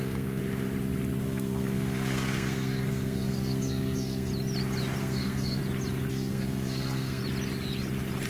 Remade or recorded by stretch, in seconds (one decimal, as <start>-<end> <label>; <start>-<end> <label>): 0.0-0.4 remade; 0.4-1.2 recorded; 1.2-4.3 remade; 4.3-5.0 recorded; 5.0-5.6 remade; 5.6-6.1 recorded; 6.1-7.2 remade; 7.2-8.3 recorded